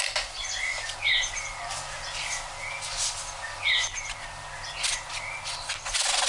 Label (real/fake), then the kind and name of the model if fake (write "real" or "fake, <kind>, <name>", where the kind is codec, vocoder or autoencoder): real